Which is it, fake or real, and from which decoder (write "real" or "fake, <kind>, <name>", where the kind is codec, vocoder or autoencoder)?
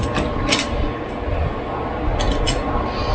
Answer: real